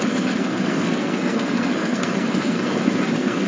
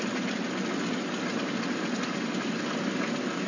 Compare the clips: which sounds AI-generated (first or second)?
first